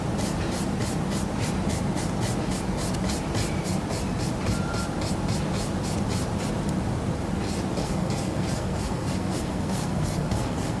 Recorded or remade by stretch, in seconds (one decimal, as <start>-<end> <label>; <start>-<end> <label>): 0.0-7.8 recorded; 7.8-10.8 remade